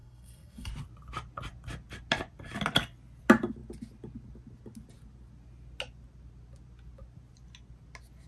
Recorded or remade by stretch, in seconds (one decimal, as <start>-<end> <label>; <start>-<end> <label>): 0.0-0.7 remade; 0.7-8.3 recorded